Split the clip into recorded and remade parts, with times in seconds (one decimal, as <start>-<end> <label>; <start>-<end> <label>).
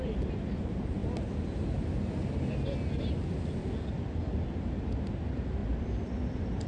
0.0-1.0 remade; 1.0-5.0 recorded; 5.0-5.6 remade; 5.6-6.3 recorded; 6.3-6.7 remade